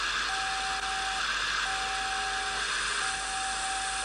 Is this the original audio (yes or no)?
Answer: yes